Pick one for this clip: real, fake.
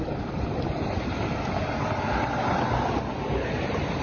real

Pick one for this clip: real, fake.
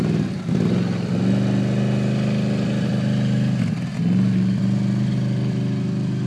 real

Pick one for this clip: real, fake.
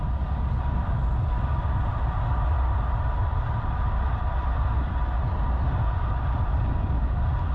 real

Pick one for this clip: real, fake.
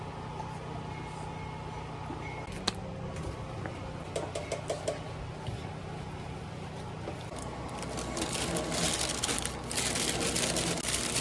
real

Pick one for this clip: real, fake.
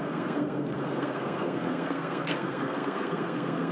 fake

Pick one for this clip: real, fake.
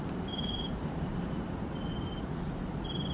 fake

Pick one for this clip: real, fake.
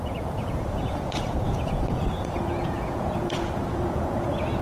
fake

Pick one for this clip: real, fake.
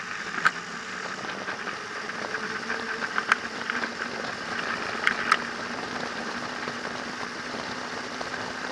fake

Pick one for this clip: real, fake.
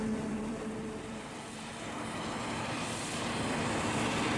fake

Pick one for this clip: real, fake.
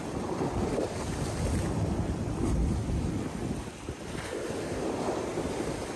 real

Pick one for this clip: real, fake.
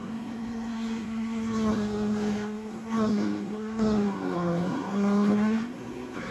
fake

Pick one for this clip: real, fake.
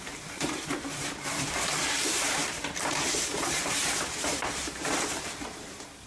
fake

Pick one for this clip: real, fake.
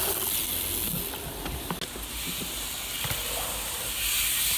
real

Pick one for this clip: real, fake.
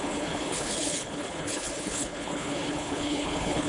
fake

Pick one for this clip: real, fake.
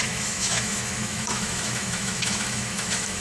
fake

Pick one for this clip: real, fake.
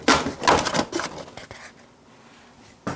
real